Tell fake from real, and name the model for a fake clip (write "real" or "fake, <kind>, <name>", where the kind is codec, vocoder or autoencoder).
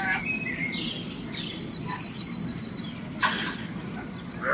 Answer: fake, vocoder, BigVGAN v2